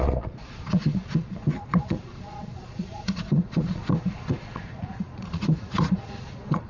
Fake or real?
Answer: fake